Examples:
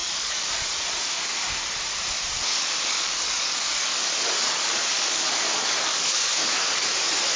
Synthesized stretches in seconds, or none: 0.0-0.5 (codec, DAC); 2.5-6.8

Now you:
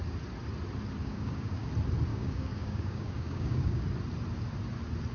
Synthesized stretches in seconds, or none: 1.0-1.7 (codec, DAC); 2.1-3.8